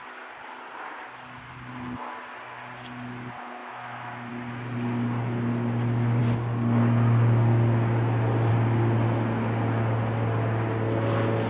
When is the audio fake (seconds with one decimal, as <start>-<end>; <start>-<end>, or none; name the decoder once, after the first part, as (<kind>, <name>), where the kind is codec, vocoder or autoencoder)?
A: 3.6-4.3 (autoencoder, DAC-VAE)